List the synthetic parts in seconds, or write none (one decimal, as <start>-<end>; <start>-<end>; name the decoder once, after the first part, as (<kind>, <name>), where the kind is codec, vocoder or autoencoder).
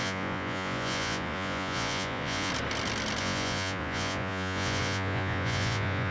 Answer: 0.0-2.5 (vocoder, Vocos); 3.2-6.1